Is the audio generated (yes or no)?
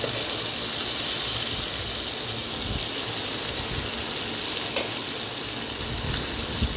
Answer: no